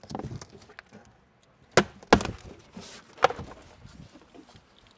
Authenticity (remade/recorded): recorded